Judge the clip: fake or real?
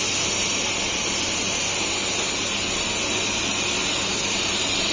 real